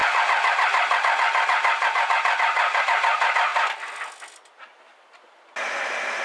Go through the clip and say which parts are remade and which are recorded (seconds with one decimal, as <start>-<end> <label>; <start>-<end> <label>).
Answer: 0.0-6.2 recorded